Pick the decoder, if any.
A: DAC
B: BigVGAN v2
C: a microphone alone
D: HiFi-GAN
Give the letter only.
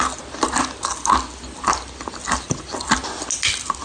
C